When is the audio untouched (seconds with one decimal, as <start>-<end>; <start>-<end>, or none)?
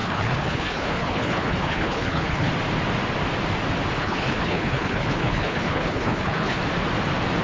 2.5-4.0; 6.6-7.4